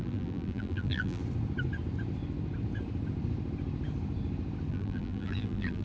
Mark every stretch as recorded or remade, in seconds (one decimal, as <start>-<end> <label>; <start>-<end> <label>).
0.0-1.2 remade; 1.2-4.7 recorded; 4.7-5.8 remade